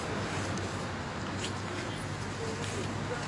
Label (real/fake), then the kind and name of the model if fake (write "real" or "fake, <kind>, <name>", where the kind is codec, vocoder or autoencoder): real